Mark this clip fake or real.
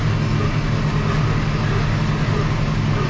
real